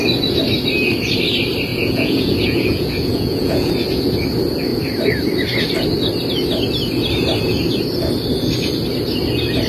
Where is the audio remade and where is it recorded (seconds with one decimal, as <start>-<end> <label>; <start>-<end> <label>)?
0.0-1.7 recorded; 1.7-3.7 remade; 3.7-9.7 recorded

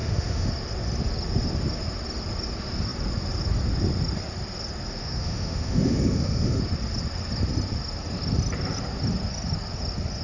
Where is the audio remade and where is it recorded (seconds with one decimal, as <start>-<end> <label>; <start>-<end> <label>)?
0.0-0.5 remade; 0.5-5.0 recorded; 5.0-6.6 remade; 6.6-10.2 recorded

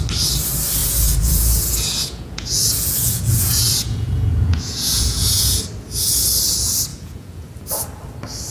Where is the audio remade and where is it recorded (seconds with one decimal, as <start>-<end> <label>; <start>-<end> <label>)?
0.0-0.8 recorded; 0.8-5.6 remade; 5.6-6.9 recorded; 6.9-7.5 remade; 7.5-8.5 recorded

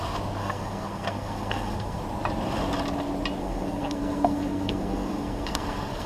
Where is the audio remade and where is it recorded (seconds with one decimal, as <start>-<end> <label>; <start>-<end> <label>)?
0.0-0.4 recorded; 0.4-2.0 remade; 2.0-3.4 recorded; 3.4-6.1 remade